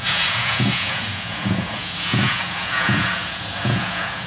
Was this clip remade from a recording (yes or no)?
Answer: yes